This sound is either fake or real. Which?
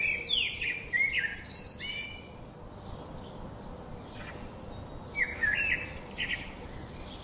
real